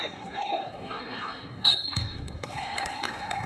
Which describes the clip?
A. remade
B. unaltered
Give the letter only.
A